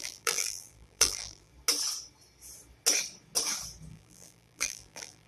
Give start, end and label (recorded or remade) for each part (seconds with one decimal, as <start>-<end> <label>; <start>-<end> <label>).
0.0-1.5 remade; 1.5-3.9 recorded; 3.9-5.3 remade